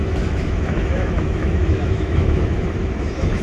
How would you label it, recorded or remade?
remade